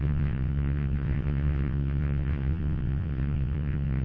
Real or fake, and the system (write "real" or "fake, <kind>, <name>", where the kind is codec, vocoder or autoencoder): fake, vocoder, WaveNeXt